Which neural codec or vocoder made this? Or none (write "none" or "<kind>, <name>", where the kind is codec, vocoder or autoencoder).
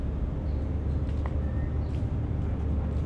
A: none